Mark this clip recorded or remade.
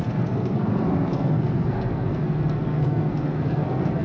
remade